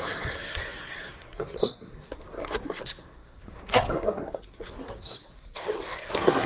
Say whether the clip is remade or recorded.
remade